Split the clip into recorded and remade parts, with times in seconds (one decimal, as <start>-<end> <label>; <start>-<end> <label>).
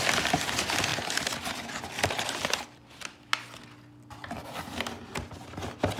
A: 0.0-6.0 recorded